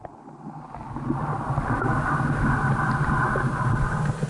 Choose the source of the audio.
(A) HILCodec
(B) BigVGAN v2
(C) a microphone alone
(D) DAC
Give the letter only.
C